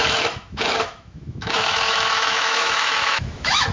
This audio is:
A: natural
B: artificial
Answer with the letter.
B